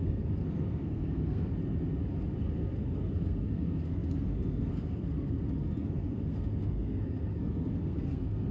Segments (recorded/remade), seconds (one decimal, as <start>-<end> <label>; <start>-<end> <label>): 0.0-1.5 remade; 1.5-2.4 recorded; 2.4-8.5 remade